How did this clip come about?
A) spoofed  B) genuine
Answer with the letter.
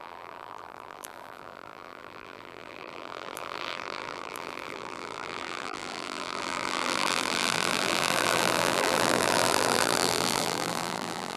A